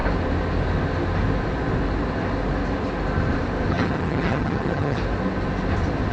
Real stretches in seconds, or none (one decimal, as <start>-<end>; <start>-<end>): 0.0-3.7; 5.0-6.1